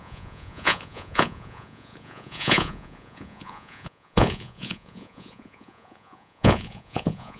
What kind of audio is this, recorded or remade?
remade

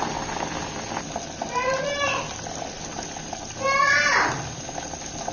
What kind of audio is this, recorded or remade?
recorded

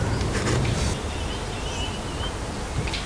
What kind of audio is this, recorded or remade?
recorded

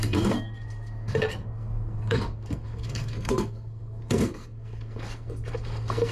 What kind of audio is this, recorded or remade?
remade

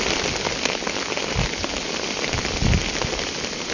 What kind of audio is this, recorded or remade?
recorded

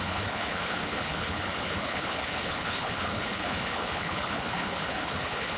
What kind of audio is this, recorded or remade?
remade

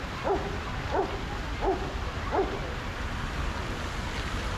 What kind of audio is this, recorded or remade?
recorded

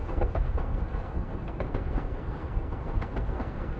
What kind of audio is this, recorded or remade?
remade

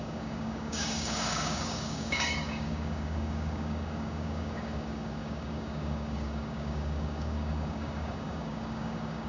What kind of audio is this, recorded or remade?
remade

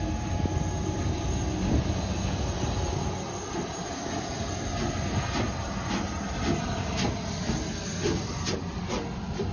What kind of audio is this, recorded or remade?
recorded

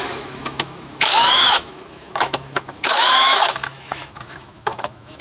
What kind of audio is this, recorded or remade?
remade